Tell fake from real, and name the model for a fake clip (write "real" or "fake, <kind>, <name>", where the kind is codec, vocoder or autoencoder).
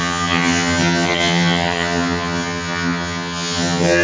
fake, vocoder, HiFi-GAN